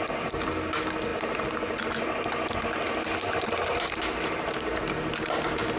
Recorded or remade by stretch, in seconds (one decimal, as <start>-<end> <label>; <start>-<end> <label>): 0.0-5.8 recorded